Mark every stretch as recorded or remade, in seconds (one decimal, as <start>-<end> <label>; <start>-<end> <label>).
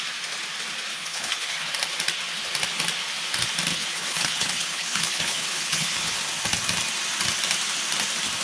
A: 0.0-0.9 recorded; 0.9-1.7 remade; 1.7-3.7 recorded; 3.7-6.2 remade; 6.2-8.4 recorded